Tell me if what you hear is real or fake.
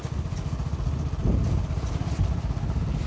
real